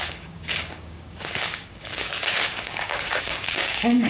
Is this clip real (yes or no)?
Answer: no